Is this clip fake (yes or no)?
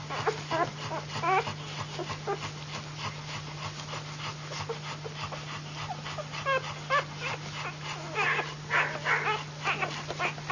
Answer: no